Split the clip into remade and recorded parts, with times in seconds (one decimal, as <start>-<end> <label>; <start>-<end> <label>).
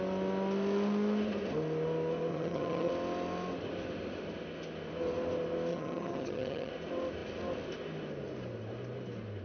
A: 0.0-2.3 recorded; 2.3-2.9 remade; 2.9-5.7 recorded; 5.7-6.7 remade; 6.7-9.4 recorded